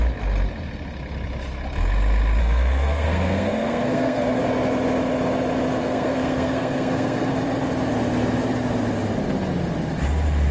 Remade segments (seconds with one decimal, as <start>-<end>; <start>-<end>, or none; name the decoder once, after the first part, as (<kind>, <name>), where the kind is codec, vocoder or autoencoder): 2.4-4.4 (codec, SNAC); 5.8-7.3